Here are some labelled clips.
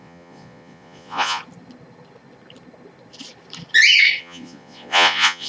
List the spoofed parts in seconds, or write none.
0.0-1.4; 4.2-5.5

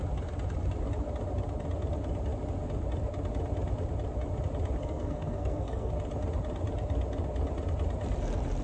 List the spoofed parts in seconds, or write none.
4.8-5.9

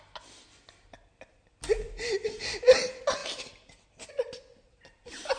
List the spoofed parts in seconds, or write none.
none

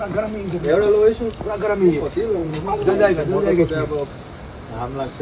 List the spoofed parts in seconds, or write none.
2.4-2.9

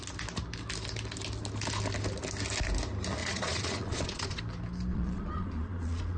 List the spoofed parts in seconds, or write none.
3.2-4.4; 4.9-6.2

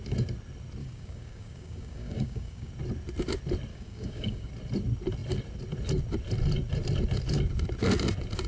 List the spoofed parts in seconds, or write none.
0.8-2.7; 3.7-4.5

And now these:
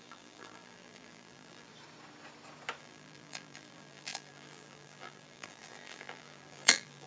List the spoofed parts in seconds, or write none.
0.0-1.7; 2.8-7.1